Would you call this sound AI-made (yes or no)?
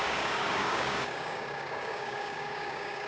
yes